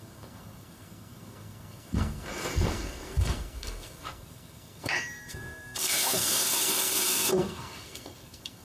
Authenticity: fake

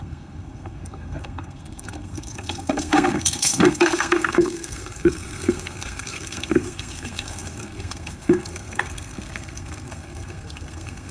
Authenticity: fake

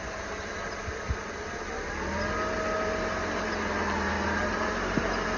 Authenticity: real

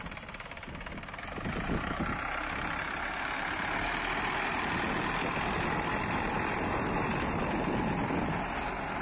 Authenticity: real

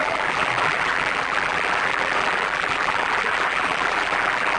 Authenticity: fake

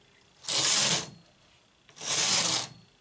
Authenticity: real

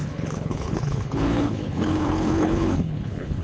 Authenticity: fake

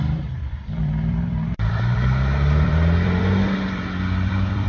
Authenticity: fake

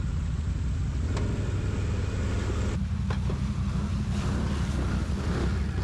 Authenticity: real